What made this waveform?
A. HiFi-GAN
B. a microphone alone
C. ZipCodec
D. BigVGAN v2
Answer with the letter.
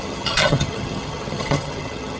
A